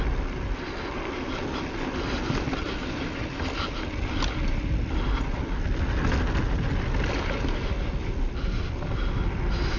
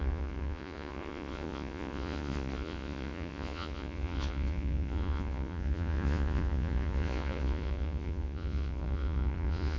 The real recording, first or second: first